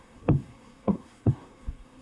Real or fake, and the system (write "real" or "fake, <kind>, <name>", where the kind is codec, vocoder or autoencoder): fake, codec, SNAC